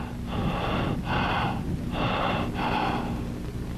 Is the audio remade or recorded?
recorded